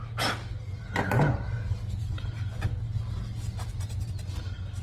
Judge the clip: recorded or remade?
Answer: recorded